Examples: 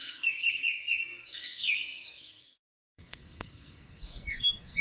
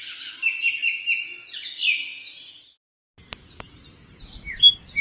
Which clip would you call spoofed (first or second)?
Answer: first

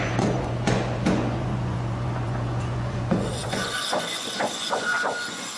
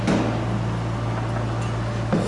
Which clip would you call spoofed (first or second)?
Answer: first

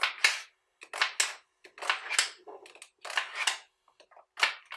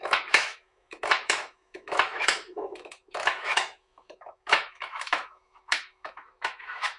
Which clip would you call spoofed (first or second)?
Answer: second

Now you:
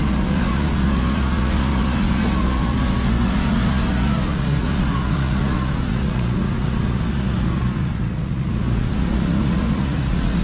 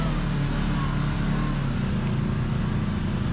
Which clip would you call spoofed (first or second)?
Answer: first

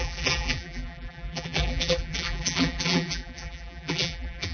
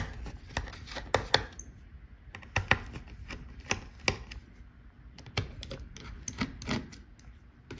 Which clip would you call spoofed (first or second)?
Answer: first